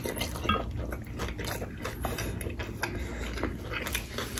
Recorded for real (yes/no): yes